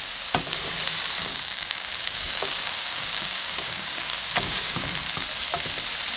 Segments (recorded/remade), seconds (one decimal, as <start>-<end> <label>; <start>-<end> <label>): 0.0-1.2 recorded; 1.2-4.9 remade; 4.9-6.2 recorded